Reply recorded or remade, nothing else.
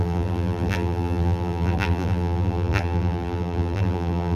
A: remade